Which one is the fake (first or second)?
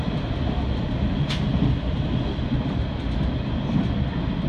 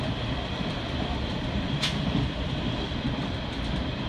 second